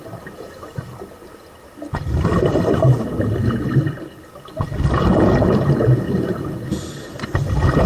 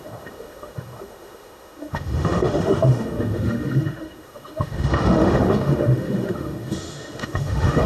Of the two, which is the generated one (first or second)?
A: second